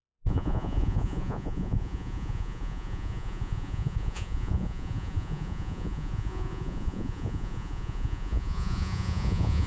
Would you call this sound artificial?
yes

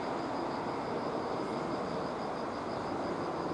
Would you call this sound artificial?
no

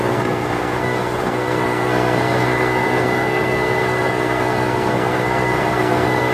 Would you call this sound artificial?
yes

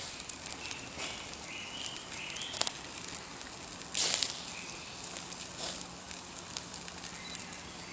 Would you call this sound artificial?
no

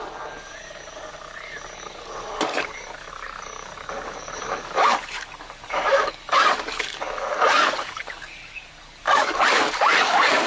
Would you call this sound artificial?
yes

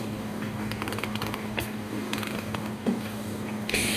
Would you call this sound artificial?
yes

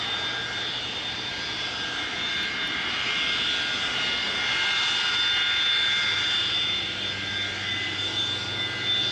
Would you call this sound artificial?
no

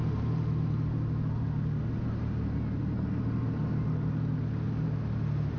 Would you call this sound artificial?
no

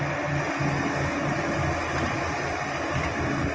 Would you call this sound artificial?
no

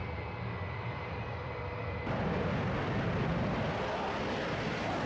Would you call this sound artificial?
no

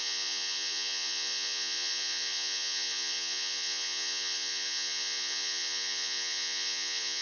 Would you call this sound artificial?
yes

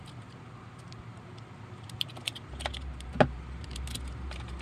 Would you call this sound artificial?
no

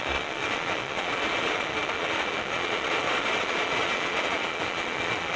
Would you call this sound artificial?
yes